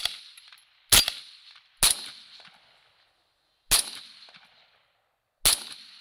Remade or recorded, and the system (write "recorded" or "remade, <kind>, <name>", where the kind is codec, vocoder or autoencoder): recorded